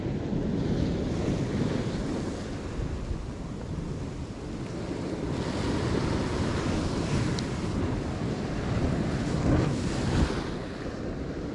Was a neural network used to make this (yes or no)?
no